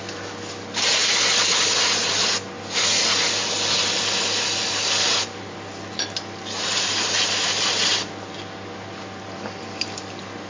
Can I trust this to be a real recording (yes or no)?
yes